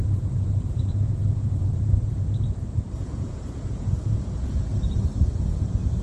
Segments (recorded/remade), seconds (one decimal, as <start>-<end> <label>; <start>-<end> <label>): 0.0-2.2 remade; 2.2-2.7 recorded; 2.7-4.7 remade; 4.7-5.2 recorded; 5.2-6.0 remade

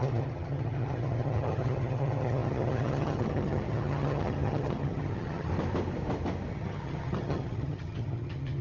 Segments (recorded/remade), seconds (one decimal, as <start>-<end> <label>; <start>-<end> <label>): 0.0-5.5 remade; 5.5-6.5 recorded; 6.5-8.6 remade

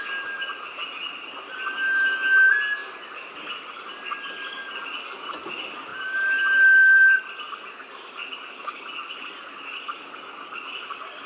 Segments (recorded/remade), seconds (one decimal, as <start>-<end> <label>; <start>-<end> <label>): 0.0-11.3 recorded

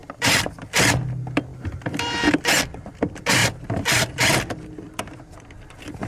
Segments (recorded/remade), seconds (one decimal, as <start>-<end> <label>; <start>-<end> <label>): 0.0-3.4 recorded; 3.4-5.3 remade; 5.3-6.1 recorded